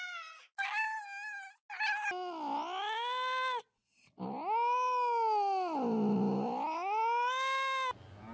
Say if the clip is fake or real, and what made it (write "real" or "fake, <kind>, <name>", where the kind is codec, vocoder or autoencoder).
real